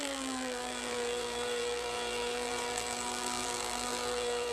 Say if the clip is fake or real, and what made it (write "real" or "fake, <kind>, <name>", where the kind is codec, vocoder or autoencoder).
fake, vocoder, BigVGAN v2